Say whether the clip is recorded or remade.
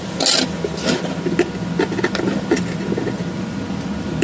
recorded